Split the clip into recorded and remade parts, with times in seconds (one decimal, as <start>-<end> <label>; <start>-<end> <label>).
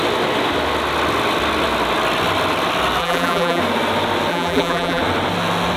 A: 0.0-3.0 recorded; 3.0-3.6 remade; 3.6-4.3 recorded; 4.3-5.0 remade; 5.0-5.8 recorded